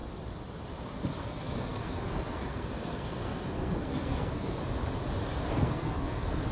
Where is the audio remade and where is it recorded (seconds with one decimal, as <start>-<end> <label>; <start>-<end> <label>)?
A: 0.0-1.2 recorded; 1.2-4.6 remade; 4.6-5.5 recorded; 5.5-6.5 remade